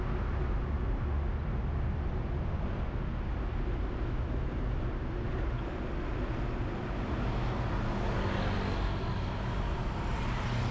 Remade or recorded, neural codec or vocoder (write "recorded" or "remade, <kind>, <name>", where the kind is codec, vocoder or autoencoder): recorded